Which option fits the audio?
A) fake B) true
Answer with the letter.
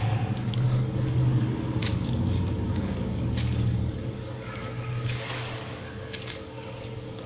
A